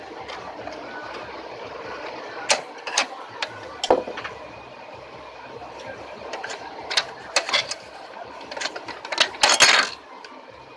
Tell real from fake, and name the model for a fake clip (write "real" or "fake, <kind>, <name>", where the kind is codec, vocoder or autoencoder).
real